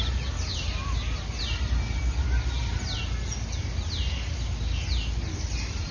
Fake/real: real